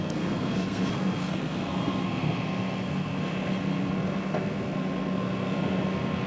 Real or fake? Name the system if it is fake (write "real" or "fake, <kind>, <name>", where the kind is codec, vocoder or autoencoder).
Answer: fake, codec, SNAC